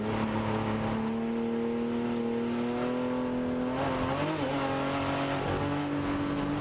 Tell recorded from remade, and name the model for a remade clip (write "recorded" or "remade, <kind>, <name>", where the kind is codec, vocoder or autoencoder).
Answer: recorded